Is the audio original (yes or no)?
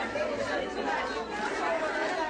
yes